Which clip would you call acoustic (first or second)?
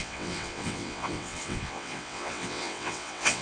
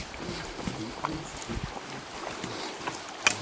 second